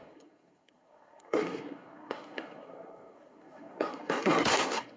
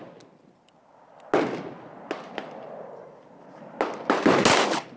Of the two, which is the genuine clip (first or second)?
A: second